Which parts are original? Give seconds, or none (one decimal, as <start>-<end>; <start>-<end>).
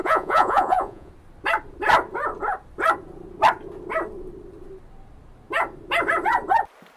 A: 1.1-7.0